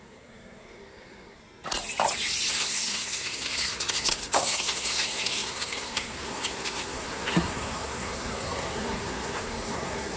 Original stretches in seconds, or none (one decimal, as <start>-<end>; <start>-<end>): 1.4-2.5